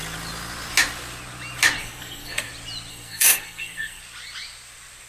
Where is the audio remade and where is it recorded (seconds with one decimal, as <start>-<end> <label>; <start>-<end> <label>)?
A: 0.0-1.8 recorded; 1.8-2.5 remade; 2.5-2.9 recorded; 2.9-4.0 remade; 4.0-5.1 recorded